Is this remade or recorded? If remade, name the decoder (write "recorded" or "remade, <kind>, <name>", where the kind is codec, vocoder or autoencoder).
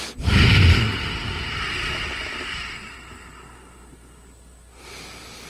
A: recorded